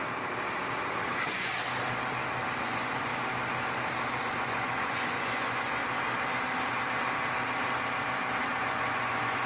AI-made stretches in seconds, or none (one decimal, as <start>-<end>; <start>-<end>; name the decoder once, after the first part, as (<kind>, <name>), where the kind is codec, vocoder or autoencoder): 1.1-1.5 (vocoder, Vocos); 2.6-3.1; 4.2-5.8; 8.6-9.5